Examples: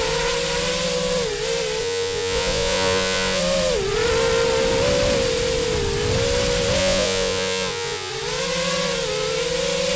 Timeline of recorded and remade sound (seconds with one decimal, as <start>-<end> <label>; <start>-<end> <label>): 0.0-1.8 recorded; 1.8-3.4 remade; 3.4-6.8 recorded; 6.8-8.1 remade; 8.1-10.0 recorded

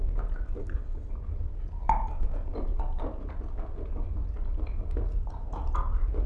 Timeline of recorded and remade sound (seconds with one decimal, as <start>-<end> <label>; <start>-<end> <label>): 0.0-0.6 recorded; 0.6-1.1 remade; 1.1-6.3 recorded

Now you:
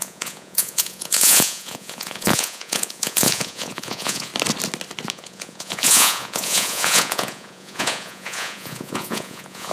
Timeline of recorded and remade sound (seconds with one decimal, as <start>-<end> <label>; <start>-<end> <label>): 0.0-4.3 remade; 4.3-5.1 recorded; 5.1-9.7 remade

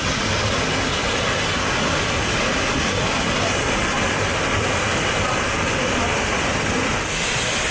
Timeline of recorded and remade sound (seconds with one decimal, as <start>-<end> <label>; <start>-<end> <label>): 0.0-7.7 recorded

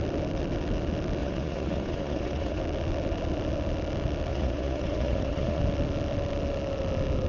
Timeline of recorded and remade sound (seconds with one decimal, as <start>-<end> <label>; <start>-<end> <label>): 0.0-1.2 recorded; 1.2-2.6 remade; 2.6-4.3 recorded; 4.3-5.6 remade; 5.6-7.3 recorded